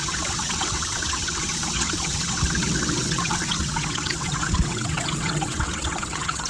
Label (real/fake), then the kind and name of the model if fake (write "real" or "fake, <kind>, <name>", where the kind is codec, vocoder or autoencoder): fake, vocoder, WaveNeXt